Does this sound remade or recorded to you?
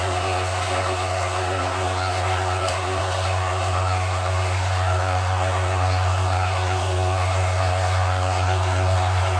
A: remade